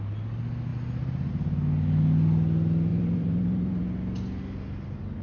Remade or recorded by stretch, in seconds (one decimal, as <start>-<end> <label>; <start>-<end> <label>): 0.0-2.9 recorded; 2.9-3.8 remade; 3.8-5.2 recorded